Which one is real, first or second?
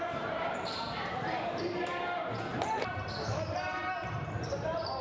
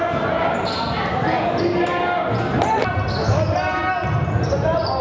second